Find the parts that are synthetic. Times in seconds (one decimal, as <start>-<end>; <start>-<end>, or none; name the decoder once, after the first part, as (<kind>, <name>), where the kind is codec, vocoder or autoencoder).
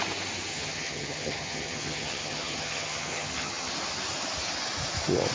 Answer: 0.5-3.7 (vocoder, HiFi-GAN)